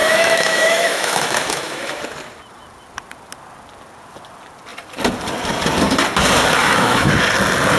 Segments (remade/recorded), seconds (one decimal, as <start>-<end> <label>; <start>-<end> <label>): 0.0-2.0 remade; 2.0-6.6 recorded; 6.6-7.1 remade; 7.1-7.8 recorded